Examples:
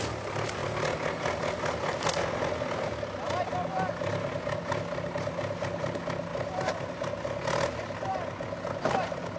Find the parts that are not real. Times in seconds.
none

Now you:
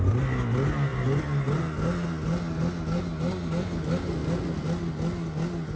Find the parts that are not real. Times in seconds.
none

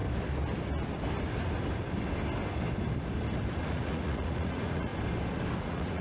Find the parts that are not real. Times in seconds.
3.6-4.9 (vocoder, Vocos); 5.6-6.0